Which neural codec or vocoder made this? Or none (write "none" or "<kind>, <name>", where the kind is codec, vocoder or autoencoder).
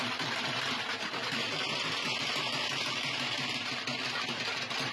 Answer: none